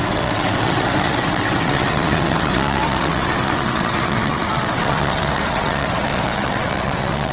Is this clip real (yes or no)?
no